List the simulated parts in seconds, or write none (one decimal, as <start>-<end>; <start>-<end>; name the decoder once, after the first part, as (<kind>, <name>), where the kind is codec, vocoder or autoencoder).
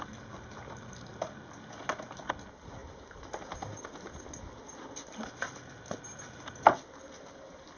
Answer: none